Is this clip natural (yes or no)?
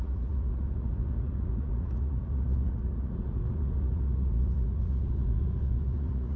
no